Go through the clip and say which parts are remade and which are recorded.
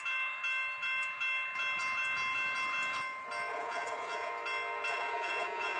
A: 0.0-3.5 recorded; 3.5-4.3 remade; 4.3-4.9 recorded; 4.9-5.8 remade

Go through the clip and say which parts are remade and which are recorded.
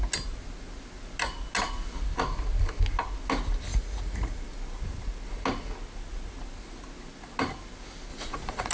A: 0.0-3.7 recorded; 3.7-4.4 remade; 4.4-8.1 recorded; 8.1-8.7 remade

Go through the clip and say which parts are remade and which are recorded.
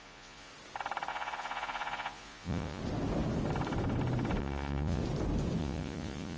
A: 0.0-0.5 remade; 0.5-1.1 recorded; 1.1-2.8 remade; 2.8-4.4 recorded; 4.4-5.0 remade; 5.0-5.6 recorded; 5.6-6.4 remade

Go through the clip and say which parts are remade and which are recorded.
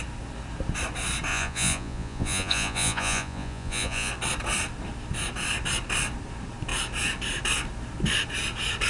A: 0.0-1.3 recorded; 1.3-4.1 remade; 4.1-8.9 recorded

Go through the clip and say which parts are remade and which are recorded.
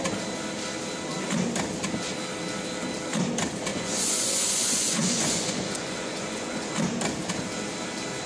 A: 0.0-3.7 recorded; 3.7-6.7 remade; 6.7-8.3 recorded